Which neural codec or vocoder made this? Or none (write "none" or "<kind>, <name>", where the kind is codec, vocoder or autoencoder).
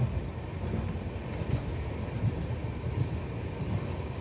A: none